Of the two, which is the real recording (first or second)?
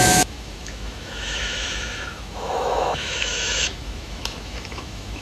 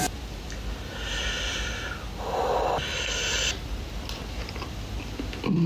second